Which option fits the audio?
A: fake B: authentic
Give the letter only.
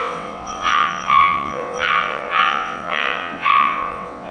A